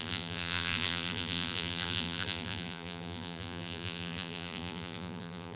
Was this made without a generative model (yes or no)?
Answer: no